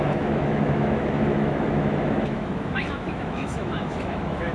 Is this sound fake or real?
fake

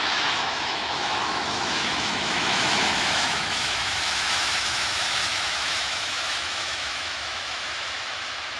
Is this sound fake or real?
fake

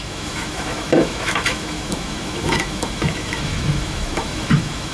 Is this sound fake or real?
fake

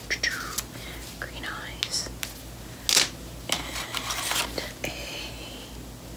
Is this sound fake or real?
real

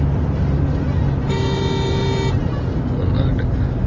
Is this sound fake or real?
real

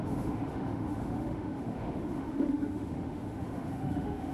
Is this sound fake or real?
fake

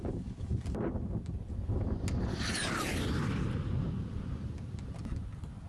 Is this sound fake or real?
real